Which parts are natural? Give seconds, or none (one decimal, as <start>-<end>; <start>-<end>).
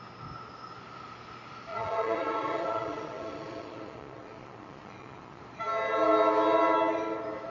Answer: 0.0-1.7; 5.4-7.5